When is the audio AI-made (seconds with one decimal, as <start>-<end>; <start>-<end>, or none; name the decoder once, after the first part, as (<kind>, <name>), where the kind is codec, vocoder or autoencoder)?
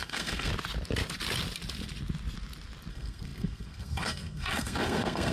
0.0-0.5 (codec, SNAC); 2.9-5.3